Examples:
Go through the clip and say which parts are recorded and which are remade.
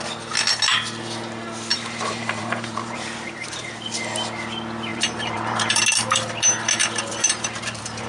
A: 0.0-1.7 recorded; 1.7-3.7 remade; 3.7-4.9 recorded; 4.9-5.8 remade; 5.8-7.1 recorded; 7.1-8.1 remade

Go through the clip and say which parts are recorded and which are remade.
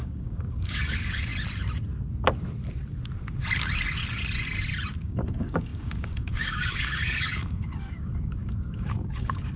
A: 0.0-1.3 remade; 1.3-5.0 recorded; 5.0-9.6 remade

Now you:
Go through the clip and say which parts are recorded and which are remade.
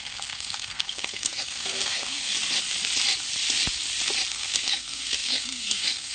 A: 0.0-2.3 remade; 2.3-4.3 recorded; 4.3-6.1 remade